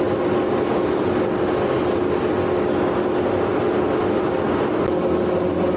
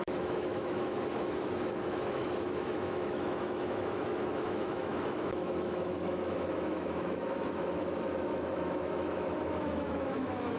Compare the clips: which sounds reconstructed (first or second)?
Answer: second